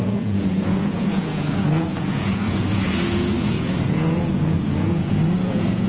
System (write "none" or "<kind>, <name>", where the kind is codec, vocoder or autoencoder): vocoder, Vocos